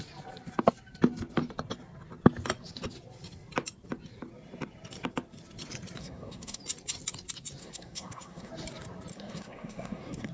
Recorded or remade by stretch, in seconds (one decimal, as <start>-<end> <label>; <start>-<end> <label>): 0.0-6.0 recorded; 6.0-6.6 remade; 6.6-7.6 recorded; 7.6-8.5 remade; 8.5-9.1 recorded; 9.1-10.3 remade